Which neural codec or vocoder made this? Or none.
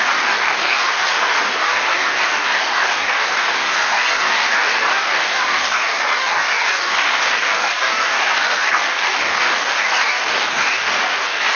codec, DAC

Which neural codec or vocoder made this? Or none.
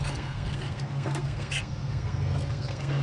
codec, SNAC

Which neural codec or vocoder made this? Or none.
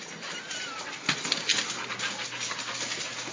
none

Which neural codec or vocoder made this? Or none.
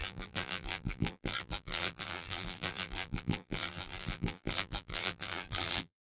vocoder, BigVGAN v2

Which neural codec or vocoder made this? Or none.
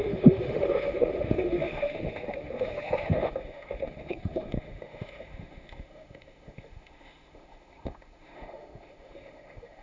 autoencoder, DAC-VAE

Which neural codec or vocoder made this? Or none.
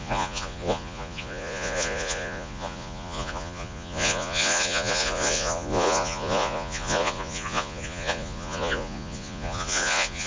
vocoder, Vocos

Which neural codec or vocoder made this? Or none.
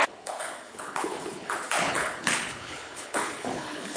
codec, HILCodec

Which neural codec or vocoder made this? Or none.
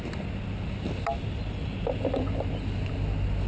none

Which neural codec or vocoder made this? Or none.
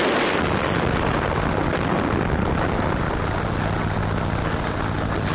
none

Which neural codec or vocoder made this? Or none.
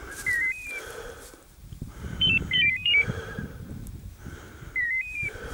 vocoder, BigVGAN v2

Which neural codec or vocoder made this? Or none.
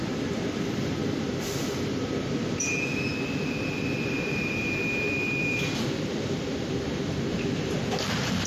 vocoder, BigVGAN v2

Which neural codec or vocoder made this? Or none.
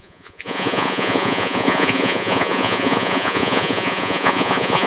vocoder, Vocos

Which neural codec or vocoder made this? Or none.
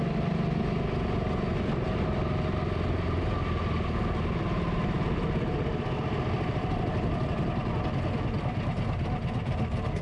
none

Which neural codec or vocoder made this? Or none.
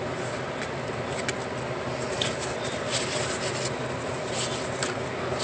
none